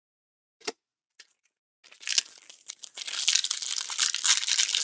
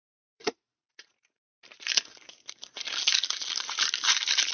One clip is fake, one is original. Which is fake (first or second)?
second